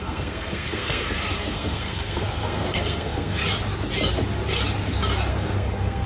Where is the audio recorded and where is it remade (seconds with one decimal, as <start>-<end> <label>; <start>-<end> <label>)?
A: 0.0-3.4 remade; 3.4-5.3 recorded; 5.3-6.1 remade